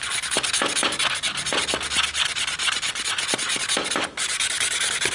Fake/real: real